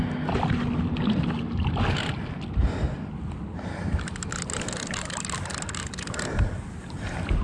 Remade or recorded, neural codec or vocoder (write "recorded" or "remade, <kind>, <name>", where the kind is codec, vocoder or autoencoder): recorded